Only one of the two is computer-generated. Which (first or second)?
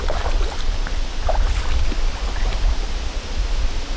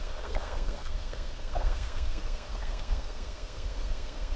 second